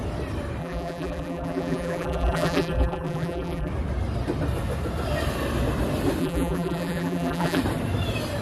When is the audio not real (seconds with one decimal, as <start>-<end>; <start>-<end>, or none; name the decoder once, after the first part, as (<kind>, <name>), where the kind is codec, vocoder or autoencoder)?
0.6-3.7 (vocoder, BigVGAN v2); 6.2-7.6